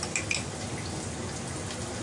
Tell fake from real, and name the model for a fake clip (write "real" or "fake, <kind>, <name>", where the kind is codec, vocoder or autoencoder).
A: real